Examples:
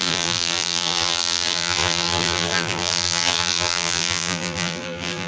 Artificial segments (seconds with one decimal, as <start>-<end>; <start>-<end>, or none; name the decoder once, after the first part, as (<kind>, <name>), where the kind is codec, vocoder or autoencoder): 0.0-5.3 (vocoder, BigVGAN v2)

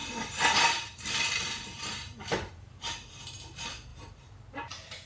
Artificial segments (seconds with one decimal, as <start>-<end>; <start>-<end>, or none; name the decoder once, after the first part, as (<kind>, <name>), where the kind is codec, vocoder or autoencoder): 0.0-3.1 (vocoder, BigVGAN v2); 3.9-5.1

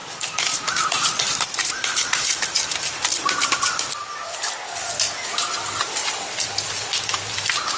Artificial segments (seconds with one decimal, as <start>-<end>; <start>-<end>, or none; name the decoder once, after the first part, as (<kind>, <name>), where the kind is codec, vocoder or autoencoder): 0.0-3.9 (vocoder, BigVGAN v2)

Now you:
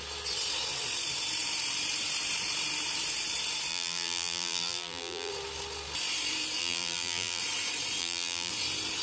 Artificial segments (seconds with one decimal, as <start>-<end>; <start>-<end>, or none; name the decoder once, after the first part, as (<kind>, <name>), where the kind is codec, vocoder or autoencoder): 3.7-5.3 (vocoder, BigVGAN v2); 6.6-7.4; 8.0-8.5

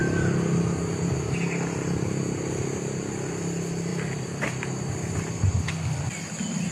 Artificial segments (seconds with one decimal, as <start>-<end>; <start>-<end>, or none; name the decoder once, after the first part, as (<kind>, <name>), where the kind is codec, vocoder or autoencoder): 3.9-5.6 (vocoder, BigVGAN v2)

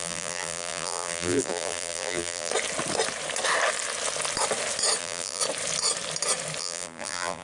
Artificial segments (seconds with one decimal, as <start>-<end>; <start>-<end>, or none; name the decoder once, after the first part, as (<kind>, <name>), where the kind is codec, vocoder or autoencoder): 0.0-2.5 (vocoder, BigVGAN v2); 5.0-5.4; 6.6-7.4

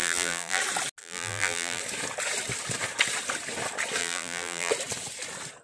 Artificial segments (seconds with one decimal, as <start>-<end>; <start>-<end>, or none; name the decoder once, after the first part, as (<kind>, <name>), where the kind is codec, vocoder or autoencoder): 0.0-0.6 (vocoder, BigVGAN v2); 1.0-1.8; 4.0-4.7

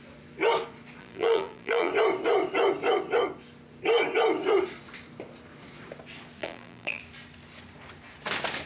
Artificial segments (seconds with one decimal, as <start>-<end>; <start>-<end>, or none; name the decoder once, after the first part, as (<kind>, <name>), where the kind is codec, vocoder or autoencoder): 1.0-1.9 (vocoder, BigVGAN v2); 6.4-7.0